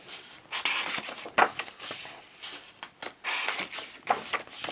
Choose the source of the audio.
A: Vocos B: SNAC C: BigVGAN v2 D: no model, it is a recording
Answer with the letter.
D